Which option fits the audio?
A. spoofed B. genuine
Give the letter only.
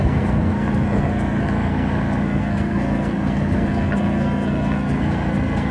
A